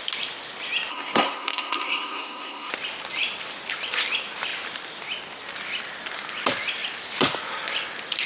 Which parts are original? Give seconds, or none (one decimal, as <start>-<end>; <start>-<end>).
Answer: 0.0-0.9; 2.7-8.3